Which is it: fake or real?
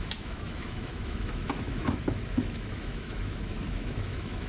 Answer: fake